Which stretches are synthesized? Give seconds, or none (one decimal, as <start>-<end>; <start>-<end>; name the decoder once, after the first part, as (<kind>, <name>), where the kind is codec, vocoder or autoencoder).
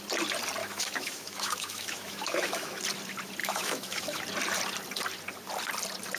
0.6-2.8 (autoencoder, DAC-VAE); 3.4-4.2